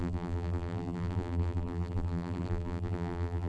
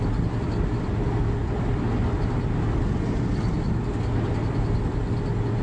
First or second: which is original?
second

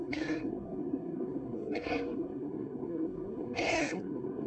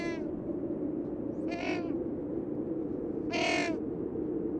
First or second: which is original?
second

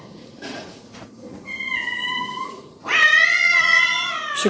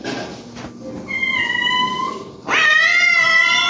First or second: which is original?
second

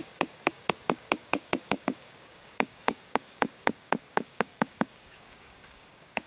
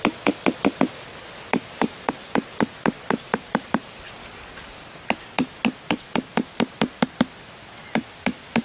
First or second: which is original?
second